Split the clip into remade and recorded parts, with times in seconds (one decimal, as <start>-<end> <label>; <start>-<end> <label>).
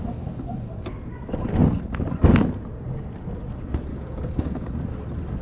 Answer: 0.0-3.9 recorded; 3.9-4.7 remade; 4.7-5.4 recorded